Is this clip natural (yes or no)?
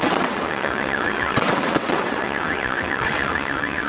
no